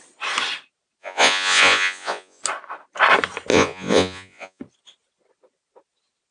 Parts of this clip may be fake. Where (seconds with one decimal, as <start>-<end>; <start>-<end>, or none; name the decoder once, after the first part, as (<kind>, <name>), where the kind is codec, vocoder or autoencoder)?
1.0-2.4 (vocoder, Vocos); 3.5-4.6